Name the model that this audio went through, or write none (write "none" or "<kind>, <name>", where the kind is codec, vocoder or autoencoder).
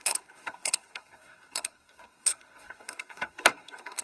codec, SNAC